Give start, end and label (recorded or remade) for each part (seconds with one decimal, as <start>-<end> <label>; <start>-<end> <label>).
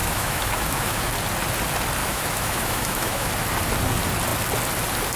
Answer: 0.0-1.1 remade; 1.1-2.0 recorded; 2.0-3.3 remade; 3.3-5.2 recorded